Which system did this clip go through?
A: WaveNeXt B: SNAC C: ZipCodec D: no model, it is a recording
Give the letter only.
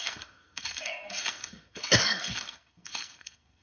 B